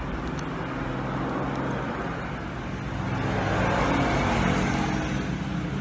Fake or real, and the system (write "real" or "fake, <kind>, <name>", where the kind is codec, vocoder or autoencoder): real